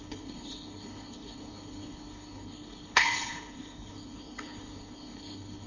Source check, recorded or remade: remade